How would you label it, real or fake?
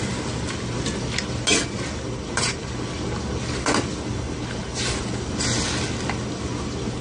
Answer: real